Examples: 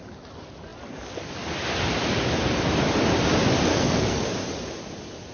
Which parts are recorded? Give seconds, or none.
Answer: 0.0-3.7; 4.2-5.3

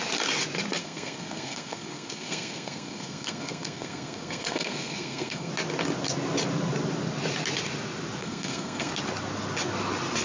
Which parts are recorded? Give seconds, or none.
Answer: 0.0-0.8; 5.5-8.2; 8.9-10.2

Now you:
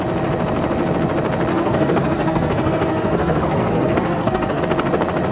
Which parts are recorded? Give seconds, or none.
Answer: 0.0-1.5; 4.6-5.3